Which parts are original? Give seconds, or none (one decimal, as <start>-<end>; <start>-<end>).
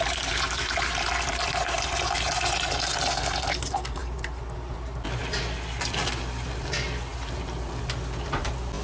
0.0-8.8